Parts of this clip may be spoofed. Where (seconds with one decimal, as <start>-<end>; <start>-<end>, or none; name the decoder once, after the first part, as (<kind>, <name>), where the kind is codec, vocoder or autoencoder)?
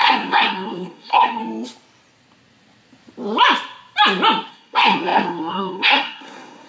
0.0-1.4 (codec, SNAC); 4.5-6.7